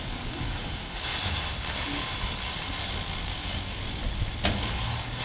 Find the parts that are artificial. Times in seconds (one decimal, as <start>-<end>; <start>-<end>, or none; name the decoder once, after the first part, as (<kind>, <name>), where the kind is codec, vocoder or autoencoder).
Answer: 0.0-1.1 (codec, DAC); 3.2-4.0; 4.5-5.2